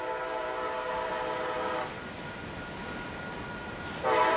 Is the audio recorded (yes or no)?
yes